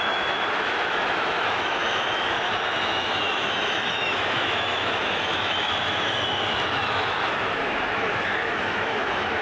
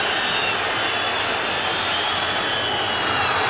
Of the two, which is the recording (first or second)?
second